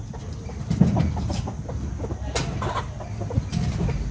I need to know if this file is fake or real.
real